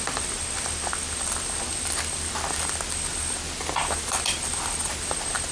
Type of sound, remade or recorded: recorded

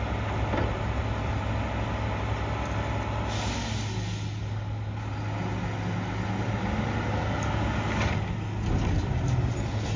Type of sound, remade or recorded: recorded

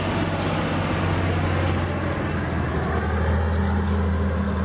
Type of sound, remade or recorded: recorded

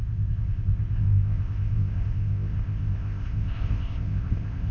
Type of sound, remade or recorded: remade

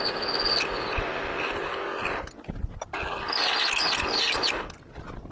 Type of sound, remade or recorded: recorded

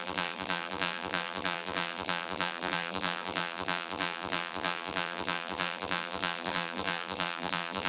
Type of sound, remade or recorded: remade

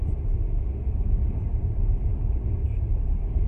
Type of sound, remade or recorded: remade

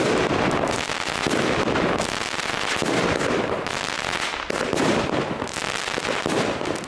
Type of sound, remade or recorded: recorded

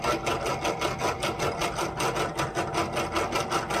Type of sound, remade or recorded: recorded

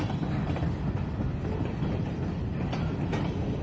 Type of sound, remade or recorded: recorded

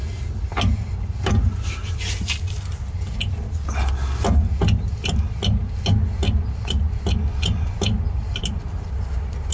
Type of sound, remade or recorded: recorded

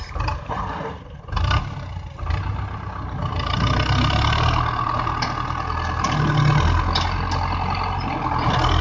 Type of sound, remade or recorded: recorded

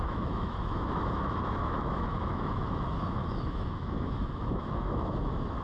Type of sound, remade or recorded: remade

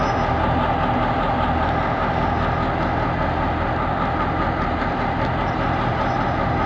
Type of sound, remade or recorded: recorded